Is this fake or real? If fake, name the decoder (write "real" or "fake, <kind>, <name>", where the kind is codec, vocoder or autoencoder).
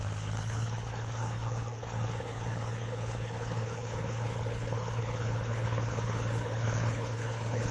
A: fake, codec, HILCodec